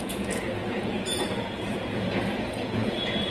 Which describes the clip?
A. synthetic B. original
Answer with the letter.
A